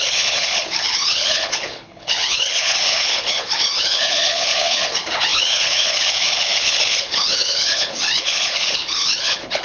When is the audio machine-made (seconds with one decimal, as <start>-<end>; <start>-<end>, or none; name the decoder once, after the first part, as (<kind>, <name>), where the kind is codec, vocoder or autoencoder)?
0.0-9.6 (codec, HILCodec)